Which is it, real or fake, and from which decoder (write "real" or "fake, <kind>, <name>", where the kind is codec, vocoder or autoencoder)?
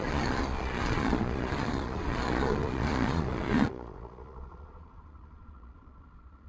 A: fake, vocoder, Vocos